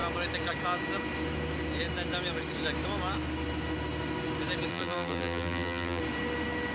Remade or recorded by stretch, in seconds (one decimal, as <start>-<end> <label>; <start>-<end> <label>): 0.0-4.7 recorded; 4.7-6.0 remade; 6.0-6.7 recorded